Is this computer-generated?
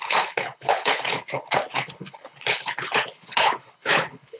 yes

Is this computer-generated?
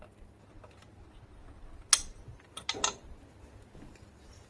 no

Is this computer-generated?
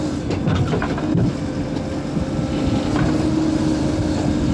no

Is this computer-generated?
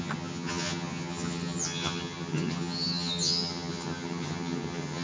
yes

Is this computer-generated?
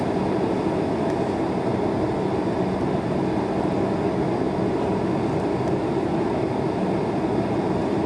no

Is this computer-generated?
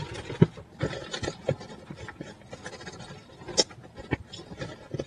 no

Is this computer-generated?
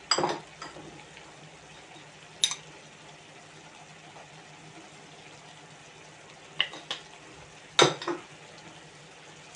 no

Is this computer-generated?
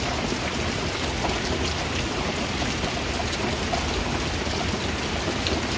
no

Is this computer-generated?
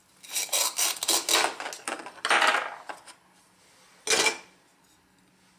no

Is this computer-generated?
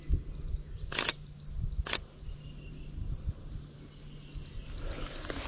no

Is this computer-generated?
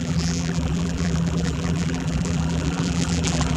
yes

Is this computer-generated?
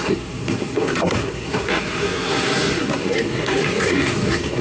yes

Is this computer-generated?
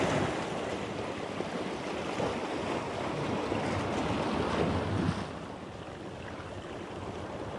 no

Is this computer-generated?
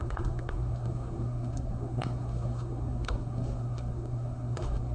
yes